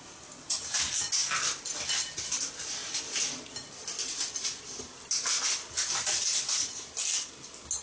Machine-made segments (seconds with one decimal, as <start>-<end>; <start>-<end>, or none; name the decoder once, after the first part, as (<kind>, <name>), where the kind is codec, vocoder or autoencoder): none